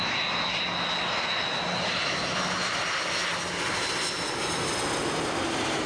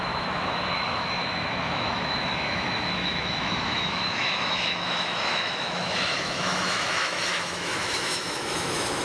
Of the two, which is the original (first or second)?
first